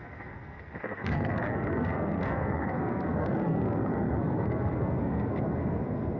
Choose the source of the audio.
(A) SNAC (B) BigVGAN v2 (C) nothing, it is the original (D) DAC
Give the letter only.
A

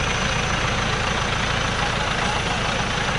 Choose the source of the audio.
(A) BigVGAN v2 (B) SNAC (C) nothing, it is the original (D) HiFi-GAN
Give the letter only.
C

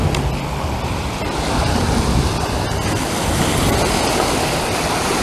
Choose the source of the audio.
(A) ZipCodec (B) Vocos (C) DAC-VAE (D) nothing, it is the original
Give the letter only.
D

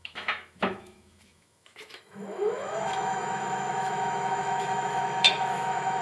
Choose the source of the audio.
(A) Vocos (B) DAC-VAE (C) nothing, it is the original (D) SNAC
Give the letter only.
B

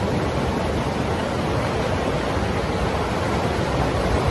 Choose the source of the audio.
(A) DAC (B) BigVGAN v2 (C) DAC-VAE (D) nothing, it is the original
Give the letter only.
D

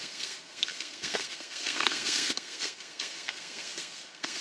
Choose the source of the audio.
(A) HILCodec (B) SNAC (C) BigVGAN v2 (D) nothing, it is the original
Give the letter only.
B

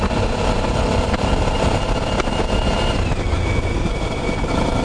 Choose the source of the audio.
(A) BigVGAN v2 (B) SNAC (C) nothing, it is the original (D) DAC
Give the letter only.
C